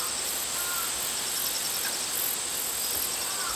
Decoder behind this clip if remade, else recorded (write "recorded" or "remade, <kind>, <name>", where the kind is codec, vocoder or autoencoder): recorded